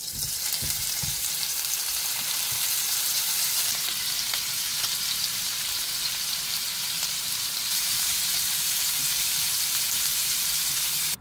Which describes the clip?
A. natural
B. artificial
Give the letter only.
B